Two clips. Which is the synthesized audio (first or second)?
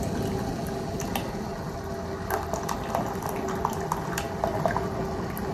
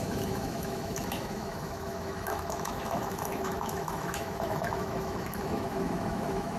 second